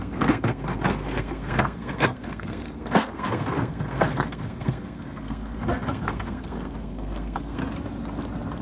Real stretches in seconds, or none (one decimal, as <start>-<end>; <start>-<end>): 7.6-8.6